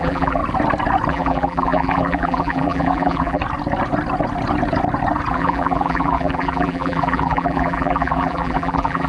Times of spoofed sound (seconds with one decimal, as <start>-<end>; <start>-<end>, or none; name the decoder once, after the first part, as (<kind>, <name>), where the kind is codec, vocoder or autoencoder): 0.0-0.4 (vocoder, BigVGAN v2); 1.1-3.4; 5.3-9.1